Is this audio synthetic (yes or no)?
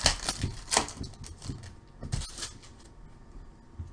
no